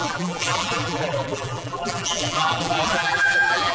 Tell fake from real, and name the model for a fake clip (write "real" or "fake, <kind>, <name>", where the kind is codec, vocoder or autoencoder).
fake, vocoder, BigVGAN v2